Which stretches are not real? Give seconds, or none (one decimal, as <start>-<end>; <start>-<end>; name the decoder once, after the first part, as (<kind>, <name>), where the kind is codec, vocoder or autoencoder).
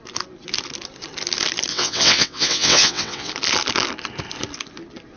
1.7-3.3 (vocoder, WaveNeXt)